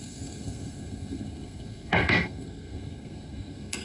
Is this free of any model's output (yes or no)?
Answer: no